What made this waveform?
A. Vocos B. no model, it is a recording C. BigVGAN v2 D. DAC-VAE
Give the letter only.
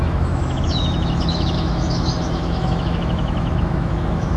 D